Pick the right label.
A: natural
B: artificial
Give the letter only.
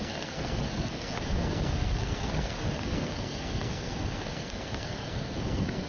B